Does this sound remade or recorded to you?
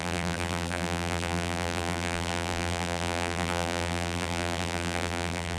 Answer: remade